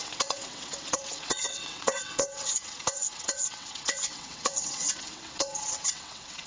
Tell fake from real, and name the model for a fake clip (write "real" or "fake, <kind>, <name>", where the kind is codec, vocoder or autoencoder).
fake, vocoder, WaveNeXt